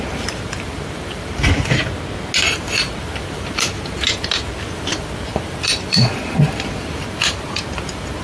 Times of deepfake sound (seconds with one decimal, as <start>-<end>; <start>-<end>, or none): 0.0-1.8; 2.5-8.2